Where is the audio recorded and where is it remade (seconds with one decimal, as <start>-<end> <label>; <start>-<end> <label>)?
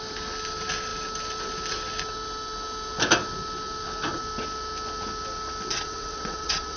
0.0-5.7 recorded; 5.7-6.8 remade